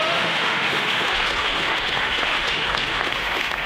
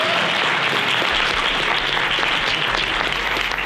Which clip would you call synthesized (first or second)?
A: first